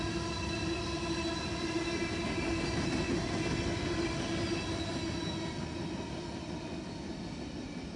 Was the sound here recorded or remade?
recorded